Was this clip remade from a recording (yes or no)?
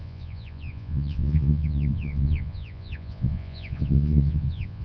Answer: yes